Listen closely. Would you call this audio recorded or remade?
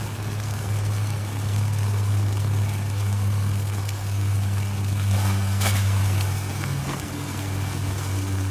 remade